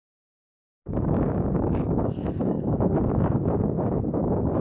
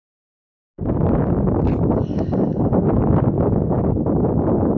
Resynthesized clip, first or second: first